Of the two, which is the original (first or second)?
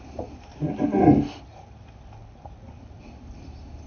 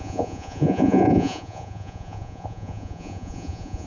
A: first